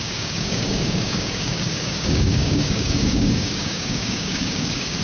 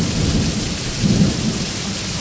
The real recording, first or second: second